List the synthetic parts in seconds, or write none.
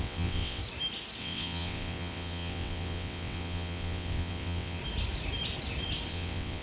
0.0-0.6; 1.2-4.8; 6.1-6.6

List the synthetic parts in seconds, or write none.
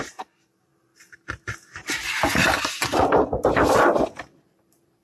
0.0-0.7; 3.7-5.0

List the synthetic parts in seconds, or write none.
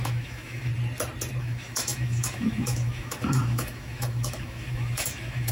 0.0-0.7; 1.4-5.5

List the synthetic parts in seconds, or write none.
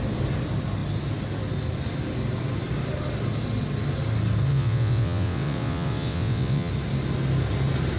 4.5-6.7